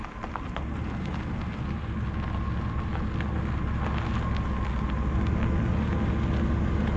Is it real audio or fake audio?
real